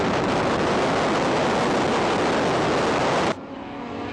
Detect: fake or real real